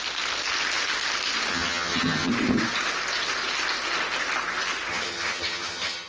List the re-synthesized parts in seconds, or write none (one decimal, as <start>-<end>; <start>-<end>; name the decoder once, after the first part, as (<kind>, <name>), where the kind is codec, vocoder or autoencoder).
1.5-2.3 (vocoder, HiFi-GAN); 4.9-6.1